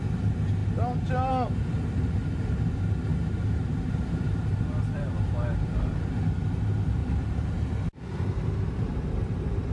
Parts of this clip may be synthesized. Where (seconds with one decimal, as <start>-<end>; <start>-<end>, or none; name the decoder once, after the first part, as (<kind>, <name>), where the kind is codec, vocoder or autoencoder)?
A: 3.1-5.0 (vocoder, BigVGAN v2); 7.0-7.8